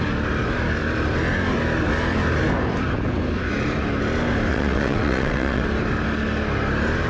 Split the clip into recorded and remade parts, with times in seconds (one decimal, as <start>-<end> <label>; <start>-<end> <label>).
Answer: 0.0-4.5 recorded; 4.5-5.6 remade; 5.6-7.1 recorded